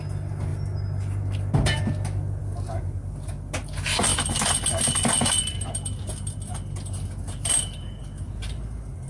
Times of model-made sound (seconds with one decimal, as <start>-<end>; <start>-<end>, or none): none